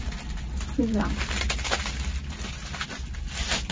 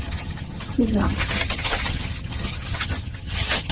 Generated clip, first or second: second